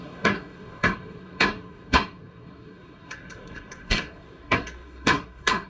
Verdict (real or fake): fake